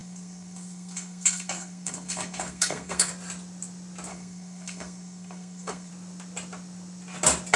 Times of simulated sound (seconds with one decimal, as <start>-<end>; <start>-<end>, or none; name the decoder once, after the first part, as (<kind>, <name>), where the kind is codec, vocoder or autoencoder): 0.0-3.1 (codec, SNAC); 4.1-5.9